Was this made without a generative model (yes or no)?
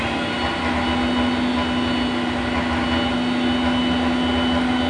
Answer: yes